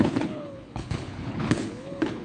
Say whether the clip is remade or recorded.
remade